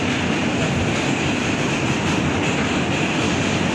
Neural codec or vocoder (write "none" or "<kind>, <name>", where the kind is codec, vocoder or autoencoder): none